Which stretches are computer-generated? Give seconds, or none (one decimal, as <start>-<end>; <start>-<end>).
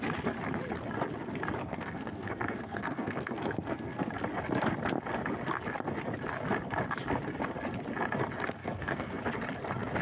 1.6-4.1; 8.6-9.2